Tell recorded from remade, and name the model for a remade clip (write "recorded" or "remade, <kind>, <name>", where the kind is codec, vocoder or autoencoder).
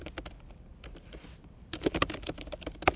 recorded